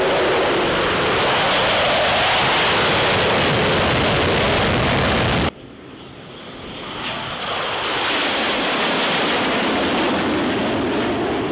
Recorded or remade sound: recorded